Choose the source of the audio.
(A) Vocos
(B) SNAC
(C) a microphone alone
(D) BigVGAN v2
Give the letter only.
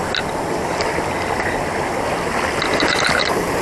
C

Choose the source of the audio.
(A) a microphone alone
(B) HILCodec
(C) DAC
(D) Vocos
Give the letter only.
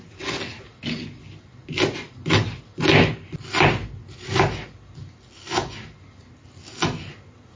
A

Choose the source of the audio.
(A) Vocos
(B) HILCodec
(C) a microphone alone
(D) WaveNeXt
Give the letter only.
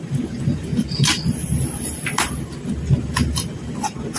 C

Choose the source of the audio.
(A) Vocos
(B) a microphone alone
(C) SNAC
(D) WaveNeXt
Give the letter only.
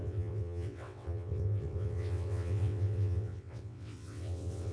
D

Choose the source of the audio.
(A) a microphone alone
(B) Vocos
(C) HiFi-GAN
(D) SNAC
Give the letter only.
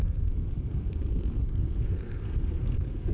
D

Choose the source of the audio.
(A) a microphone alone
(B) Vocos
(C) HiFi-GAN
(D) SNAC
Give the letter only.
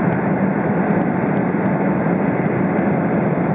A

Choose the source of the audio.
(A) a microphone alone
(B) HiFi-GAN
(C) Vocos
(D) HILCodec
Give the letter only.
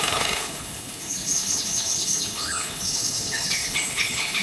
D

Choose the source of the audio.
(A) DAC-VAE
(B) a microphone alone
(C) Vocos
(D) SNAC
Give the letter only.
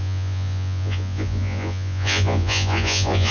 C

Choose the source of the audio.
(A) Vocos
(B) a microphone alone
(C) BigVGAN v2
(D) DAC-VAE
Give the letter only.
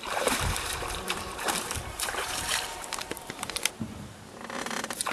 C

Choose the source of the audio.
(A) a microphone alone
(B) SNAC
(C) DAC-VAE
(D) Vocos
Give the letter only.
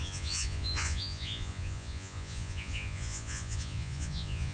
D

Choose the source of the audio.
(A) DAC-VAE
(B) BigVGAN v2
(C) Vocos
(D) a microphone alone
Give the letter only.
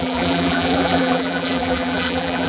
B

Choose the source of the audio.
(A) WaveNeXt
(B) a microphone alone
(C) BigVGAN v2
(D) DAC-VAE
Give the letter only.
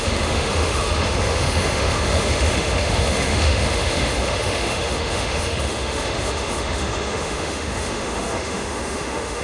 D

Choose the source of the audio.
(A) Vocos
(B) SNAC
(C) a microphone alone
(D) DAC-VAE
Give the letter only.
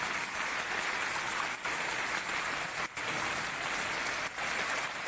C